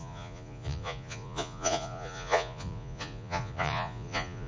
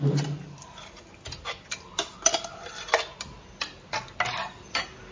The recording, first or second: second